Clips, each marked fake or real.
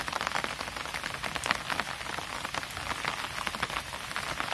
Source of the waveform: real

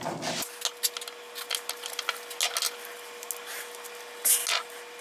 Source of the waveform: real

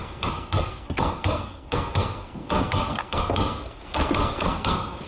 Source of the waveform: fake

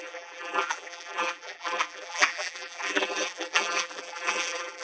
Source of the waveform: fake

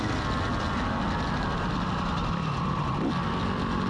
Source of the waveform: real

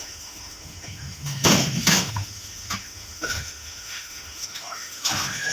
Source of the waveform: fake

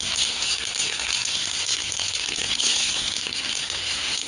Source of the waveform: fake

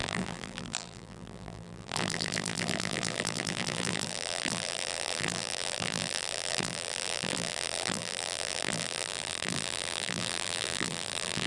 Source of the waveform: fake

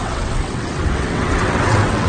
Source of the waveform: fake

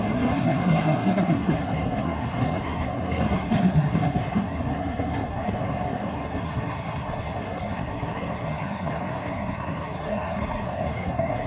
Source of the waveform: fake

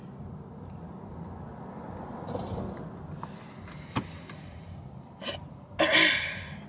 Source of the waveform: real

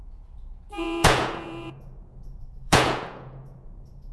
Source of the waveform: fake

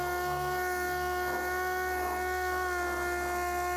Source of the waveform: real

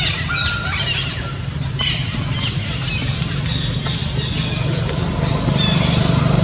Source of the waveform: real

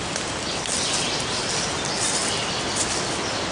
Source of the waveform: real